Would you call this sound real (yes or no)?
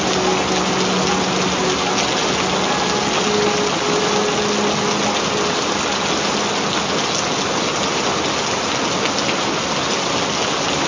yes